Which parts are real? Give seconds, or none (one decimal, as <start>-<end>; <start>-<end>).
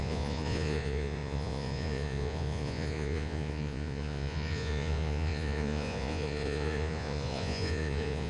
none